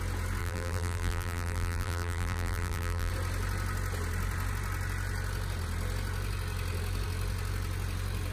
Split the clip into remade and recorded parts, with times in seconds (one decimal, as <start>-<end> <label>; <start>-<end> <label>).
0.0-0.4 recorded; 0.4-3.1 remade; 3.1-8.3 recorded